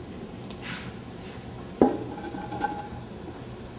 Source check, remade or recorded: recorded